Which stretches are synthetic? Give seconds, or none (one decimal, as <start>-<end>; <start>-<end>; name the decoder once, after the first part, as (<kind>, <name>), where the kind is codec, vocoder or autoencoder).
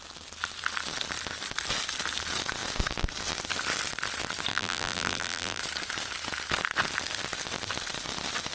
4.5-5.6 (vocoder, BigVGAN v2)